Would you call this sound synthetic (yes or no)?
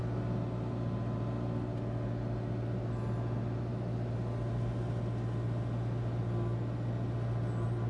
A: no